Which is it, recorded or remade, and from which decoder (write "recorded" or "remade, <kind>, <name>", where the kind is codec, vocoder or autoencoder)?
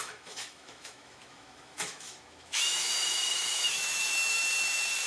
remade, autoencoder, DAC-VAE